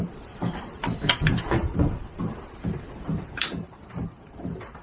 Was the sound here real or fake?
fake